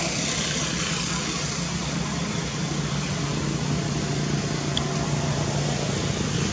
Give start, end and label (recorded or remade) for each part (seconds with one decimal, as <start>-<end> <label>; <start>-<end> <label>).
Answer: 0.0-6.5 recorded